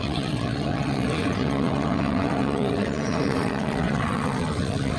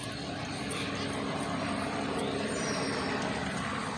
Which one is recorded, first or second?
second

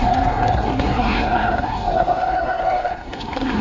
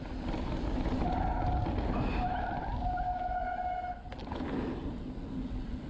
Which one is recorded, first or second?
second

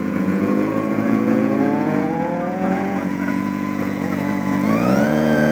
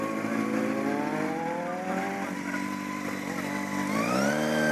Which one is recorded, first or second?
second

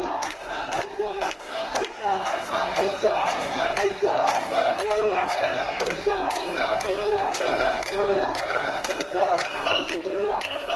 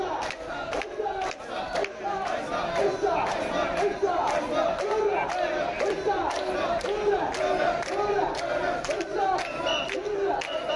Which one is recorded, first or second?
second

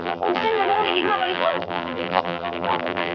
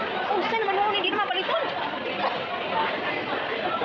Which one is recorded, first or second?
second